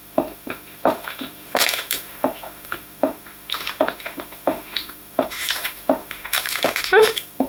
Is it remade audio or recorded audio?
remade